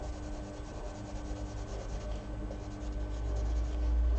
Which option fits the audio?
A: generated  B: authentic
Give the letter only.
B